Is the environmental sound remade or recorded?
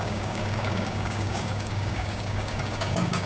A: remade